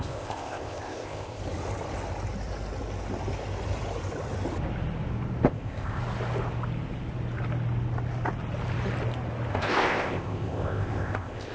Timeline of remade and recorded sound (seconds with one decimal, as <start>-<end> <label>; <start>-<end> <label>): 0.0-1.4 remade; 1.4-5.5 recorded; 5.5-6.0 remade; 6.0-9.5 recorded; 9.5-11.5 remade